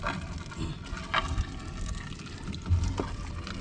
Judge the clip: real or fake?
real